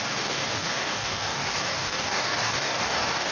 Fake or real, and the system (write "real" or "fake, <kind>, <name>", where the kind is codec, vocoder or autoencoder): fake, codec, DAC